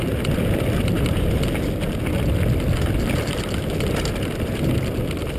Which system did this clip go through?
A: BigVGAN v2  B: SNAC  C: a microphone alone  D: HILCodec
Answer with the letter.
C